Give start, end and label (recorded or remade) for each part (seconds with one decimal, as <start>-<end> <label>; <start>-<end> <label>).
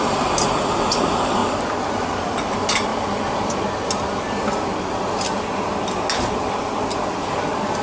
0.0-1.4 remade; 1.4-2.0 recorded; 2.0-2.9 remade; 2.9-7.8 recorded